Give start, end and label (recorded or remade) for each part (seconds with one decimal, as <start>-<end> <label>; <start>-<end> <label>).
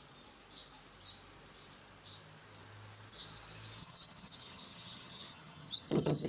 0.0-3.8 recorded; 3.8-6.3 remade